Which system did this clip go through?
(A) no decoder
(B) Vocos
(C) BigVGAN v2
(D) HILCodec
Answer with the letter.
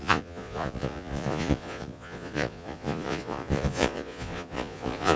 B